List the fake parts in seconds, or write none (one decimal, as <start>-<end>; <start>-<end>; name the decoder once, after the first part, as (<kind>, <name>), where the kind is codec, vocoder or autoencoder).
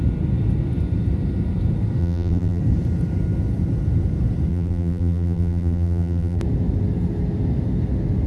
2.0-2.6 (vocoder, BigVGAN v2); 4.5-6.4